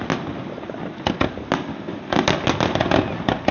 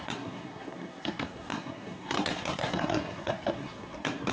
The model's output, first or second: second